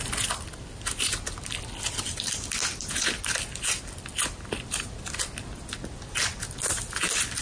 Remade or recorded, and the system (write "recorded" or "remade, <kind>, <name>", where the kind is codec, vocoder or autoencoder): recorded